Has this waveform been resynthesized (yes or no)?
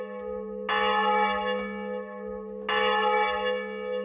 no